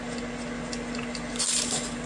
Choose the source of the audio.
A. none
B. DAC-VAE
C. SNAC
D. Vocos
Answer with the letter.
A